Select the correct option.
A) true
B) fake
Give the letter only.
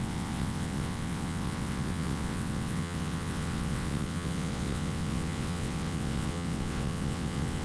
B